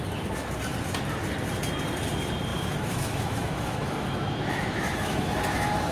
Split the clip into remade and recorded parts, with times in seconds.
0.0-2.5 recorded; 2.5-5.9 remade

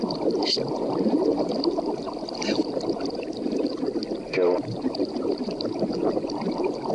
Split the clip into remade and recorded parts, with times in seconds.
0.0-6.9 recorded

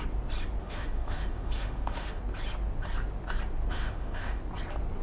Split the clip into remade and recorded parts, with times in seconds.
0.0-0.6 recorded; 0.6-2.2 remade; 2.2-3.7 recorded; 3.7-4.4 remade; 4.4-5.0 recorded

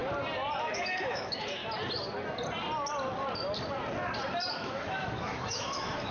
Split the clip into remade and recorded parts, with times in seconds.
0.0-0.6 recorded; 0.6-1.6 remade; 1.6-4.5 recorded; 4.5-6.1 remade

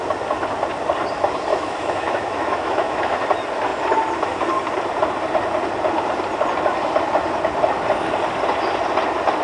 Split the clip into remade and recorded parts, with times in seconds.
0.0-1.5 recorded; 1.5-3.2 remade; 3.2-9.4 recorded

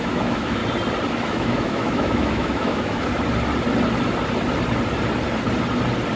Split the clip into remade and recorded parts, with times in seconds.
0.0-0.6 remade; 0.6-1.1 recorded; 1.1-3.1 remade; 3.1-6.2 recorded

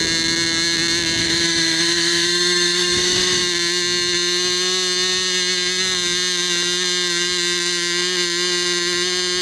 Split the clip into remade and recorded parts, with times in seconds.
0.0-1.2 recorded; 1.2-3.4 remade; 3.4-9.4 recorded